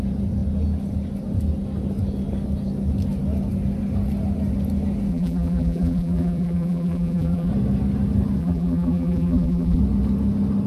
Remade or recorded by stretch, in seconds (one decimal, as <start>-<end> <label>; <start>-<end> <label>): 0.0-5.1 recorded; 5.1-7.5 remade; 7.5-8.4 recorded; 8.4-9.8 remade; 9.8-10.7 recorded